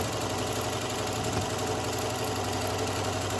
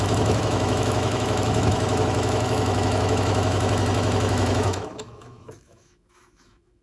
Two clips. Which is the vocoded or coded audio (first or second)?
second